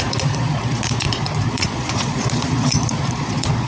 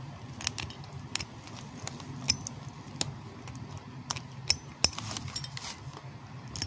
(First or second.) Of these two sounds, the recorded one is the second